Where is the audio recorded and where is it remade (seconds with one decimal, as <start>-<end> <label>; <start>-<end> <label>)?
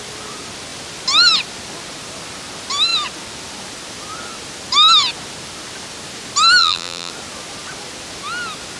0.0-6.6 recorded; 6.6-7.1 remade; 7.1-8.8 recorded